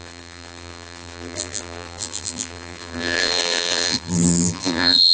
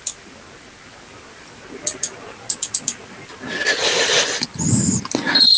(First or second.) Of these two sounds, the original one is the second